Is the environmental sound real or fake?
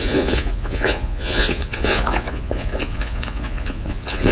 fake